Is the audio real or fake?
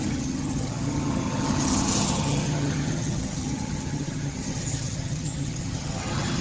fake